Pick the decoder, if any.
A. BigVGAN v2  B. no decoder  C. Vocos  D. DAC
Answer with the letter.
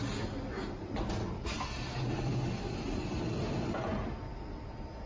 B